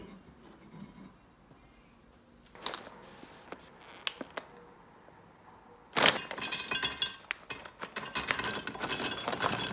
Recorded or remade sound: recorded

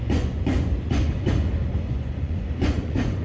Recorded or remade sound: remade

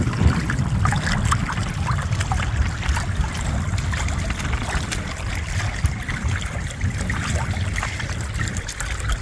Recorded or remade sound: recorded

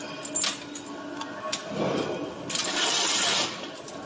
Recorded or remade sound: recorded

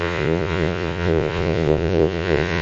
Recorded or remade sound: remade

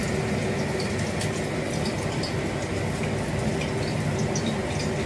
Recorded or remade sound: recorded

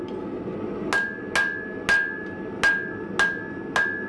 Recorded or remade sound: recorded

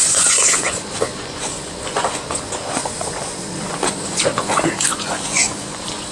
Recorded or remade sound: remade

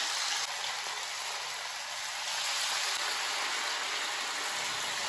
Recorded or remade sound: recorded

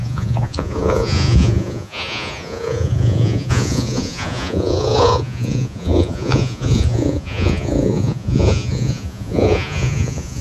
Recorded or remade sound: remade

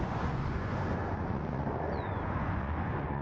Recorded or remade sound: remade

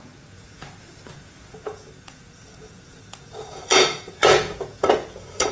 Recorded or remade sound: remade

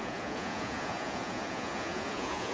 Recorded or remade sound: remade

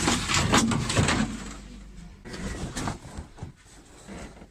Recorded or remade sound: recorded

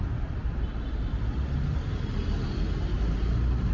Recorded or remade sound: recorded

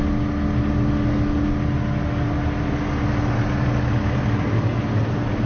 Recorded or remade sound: recorded